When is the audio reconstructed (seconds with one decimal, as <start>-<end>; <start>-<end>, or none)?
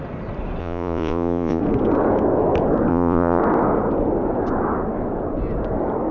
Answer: 0.6-1.6; 2.9-3.4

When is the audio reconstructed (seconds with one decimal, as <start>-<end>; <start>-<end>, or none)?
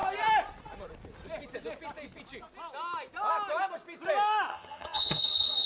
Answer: 4.5-5.7